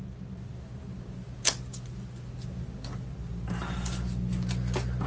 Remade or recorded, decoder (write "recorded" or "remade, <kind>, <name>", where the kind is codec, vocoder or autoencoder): recorded